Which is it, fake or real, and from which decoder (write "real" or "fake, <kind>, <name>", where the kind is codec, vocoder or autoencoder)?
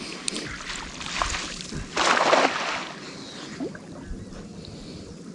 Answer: real